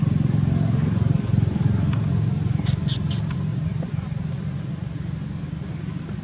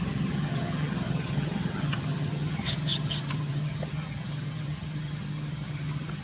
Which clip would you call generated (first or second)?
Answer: second